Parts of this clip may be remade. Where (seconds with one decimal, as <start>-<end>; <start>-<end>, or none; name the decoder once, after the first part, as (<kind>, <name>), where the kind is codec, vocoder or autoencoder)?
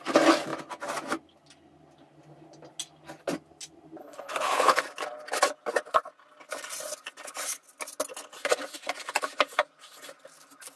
4.0-4.8 (codec, HILCodec)